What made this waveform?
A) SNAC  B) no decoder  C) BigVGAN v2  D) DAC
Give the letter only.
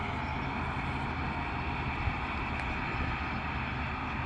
B